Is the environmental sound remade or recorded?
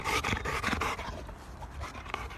remade